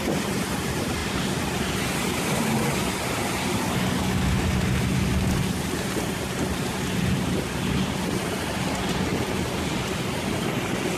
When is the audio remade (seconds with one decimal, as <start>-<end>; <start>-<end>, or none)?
none